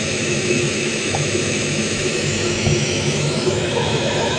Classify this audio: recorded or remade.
remade